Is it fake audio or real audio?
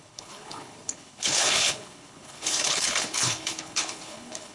fake